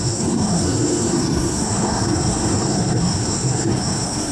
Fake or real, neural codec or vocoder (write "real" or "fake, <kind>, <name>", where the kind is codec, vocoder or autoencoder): fake, codec, SNAC